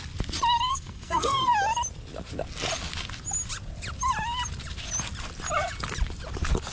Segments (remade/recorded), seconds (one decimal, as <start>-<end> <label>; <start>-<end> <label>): 0.0-0.7 recorded; 0.7-1.5 remade; 1.5-6.7 recorded